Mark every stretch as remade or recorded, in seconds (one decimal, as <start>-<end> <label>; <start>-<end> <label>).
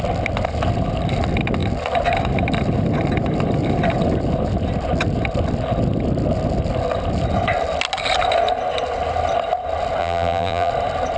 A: 0.0-10.0 recorded; 10.0-10.7 remade; 10.7-11.2 recorded